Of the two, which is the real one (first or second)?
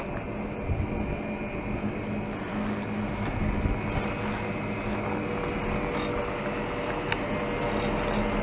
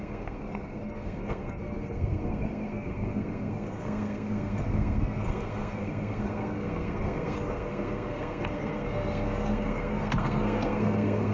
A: first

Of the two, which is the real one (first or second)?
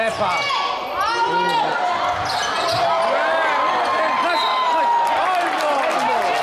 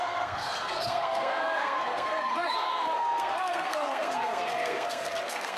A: first